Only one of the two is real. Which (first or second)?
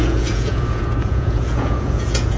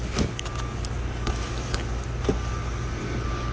second